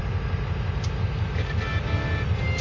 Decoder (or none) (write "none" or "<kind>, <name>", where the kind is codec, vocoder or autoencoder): none